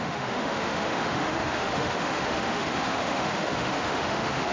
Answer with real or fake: fake